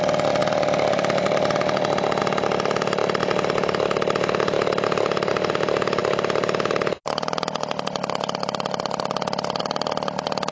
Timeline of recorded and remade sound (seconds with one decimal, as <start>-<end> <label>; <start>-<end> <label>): 0.0-0.4 recorded; 0.4-2.2 remade; 2.2-10.5 recorded